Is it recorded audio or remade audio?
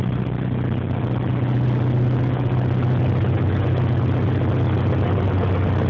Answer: recorded